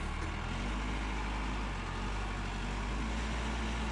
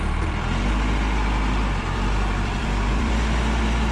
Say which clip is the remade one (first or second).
second